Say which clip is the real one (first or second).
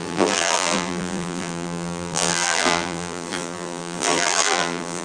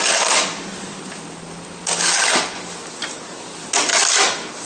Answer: second